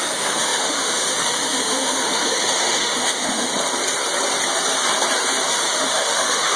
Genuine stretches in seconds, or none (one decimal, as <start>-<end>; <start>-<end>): 3.5-5.5